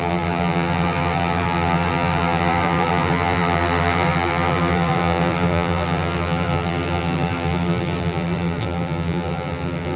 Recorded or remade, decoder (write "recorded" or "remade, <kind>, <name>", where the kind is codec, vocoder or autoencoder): remade, vocoder, BigVGAN v2